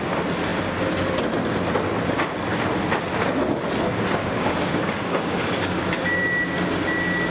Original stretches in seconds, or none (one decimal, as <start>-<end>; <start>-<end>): 0.0-4.2; 5.9-7.3